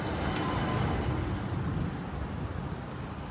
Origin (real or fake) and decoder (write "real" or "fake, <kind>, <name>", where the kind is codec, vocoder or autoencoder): real